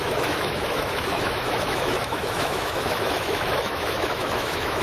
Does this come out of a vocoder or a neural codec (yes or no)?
yes